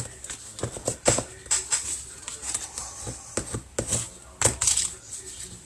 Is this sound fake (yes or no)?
no